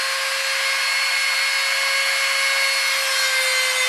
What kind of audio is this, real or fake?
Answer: real